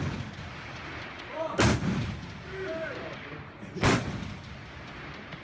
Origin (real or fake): real